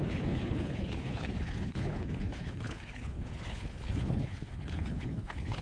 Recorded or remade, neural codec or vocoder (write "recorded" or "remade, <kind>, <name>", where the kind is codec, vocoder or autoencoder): remade, codec, HILCodec